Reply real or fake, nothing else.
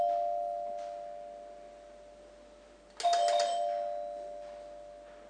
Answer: real